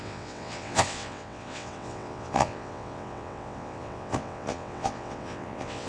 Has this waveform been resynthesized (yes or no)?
yes